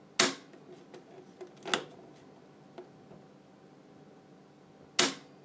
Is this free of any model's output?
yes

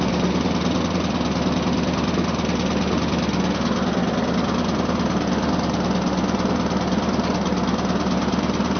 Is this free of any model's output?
yes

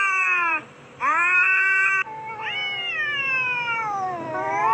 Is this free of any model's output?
no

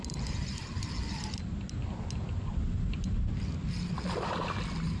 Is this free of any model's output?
yes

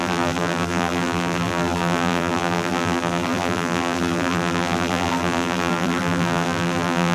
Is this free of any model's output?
no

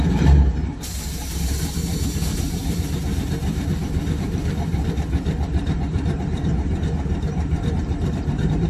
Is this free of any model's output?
no